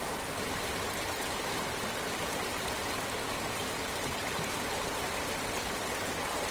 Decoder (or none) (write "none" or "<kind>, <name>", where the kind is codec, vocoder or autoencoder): none